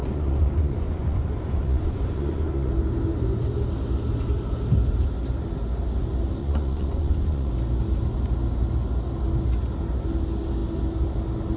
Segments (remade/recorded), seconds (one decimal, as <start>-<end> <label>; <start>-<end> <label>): 0.0-2.7 remade; 2.7-6.4 recorded; 6.4-7.5 remade; 7.5-11.6 recorded